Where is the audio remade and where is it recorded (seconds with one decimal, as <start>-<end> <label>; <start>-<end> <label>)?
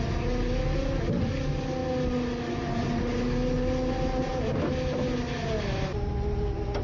0.0-6.8 recorded